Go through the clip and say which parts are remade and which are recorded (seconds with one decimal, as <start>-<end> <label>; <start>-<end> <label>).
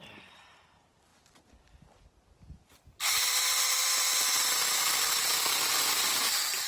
0.0-6.7 recorded